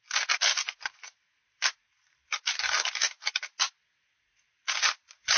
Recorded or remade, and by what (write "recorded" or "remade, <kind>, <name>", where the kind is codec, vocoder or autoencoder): recorded